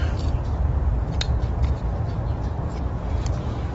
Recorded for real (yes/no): yes